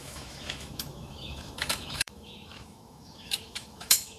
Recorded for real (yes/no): no